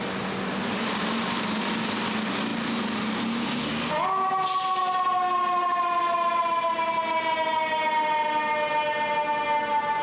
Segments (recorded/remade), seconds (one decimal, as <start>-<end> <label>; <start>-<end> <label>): 0.0-10.0 recorded